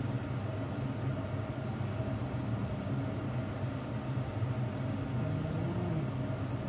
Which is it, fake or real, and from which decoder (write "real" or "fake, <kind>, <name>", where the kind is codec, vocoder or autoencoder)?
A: real